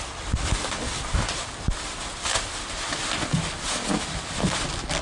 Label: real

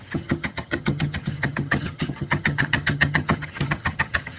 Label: fake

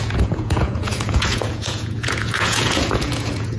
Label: fake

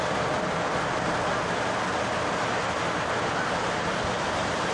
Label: real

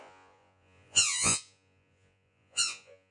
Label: fake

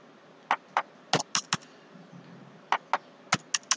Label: real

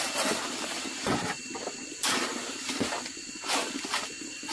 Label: real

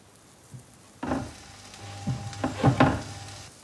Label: real